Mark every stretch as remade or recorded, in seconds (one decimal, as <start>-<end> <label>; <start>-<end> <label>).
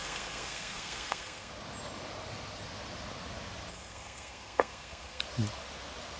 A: 0.0-1.5 remade; 1.5-3.7 recorded; 3.7-5.2 remade; 5.2-6.2 recorded